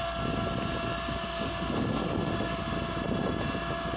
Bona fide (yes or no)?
yes